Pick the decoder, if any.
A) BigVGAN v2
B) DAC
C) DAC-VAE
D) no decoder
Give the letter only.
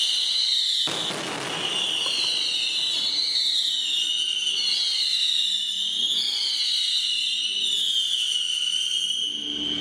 D